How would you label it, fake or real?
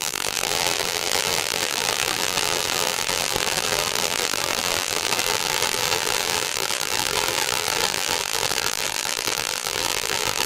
fake